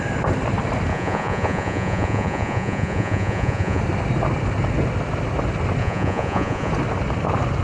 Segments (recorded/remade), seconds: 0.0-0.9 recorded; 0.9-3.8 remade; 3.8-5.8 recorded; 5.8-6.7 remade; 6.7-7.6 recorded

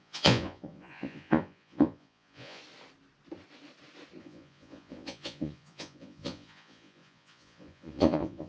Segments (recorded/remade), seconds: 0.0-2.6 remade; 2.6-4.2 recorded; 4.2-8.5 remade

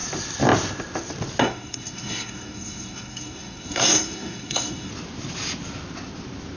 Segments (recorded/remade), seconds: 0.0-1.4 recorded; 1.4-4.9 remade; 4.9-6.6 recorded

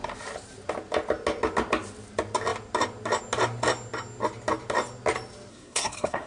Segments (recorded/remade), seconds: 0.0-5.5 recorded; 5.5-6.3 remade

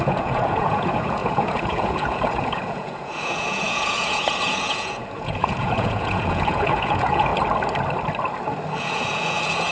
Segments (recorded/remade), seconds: 0.0-7.3 remade; 7.3-8.8 recorded; 8.8-9.7 remade